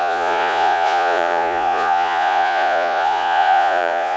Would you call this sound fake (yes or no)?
yes